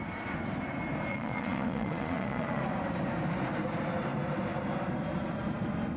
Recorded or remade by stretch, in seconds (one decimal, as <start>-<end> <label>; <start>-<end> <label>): 0.0-1.1 recorded; 1.1-2.6 remade; 2.6-6.0 recorded